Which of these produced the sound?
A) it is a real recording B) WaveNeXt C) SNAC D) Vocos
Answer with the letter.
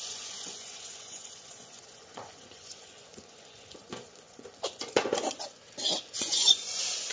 D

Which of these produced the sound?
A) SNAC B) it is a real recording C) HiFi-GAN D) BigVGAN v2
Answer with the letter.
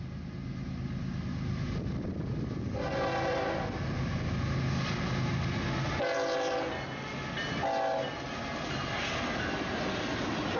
B